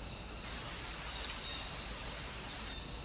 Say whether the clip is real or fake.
real